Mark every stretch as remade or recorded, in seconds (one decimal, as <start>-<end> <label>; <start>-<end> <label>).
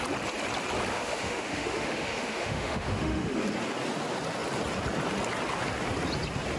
0.0-0.9 recorded; 0.9-3.4 remade; 3.4-6.6 recorded